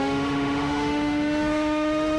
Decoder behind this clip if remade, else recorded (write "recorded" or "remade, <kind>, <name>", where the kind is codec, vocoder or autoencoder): remade, autoencoder, DAC-VAE